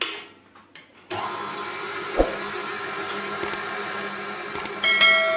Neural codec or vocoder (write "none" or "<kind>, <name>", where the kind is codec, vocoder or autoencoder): none